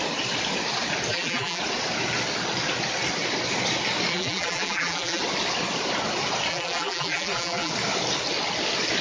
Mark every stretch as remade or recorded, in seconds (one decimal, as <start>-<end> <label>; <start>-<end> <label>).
0.0-1.1 recorded; 1.1-1.6 remade; 1.6-4.1 recorded; 4.1-5.2 remade; 5.2-6.5 recorded; 6.5-7.7 remade; 7.7-9.0 recorded